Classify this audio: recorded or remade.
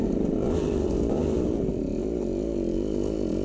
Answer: remade